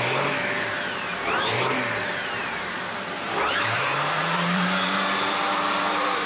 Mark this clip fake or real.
fake